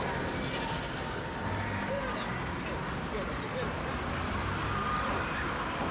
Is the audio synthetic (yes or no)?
no